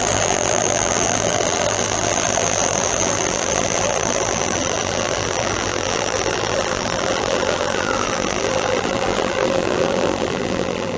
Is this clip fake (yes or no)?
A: yes